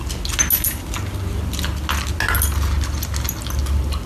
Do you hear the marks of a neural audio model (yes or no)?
no